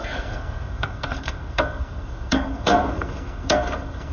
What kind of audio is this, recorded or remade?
remade